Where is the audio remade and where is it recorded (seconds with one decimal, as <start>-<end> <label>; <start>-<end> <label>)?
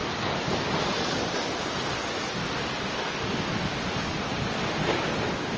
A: 0.0-5.6 recorded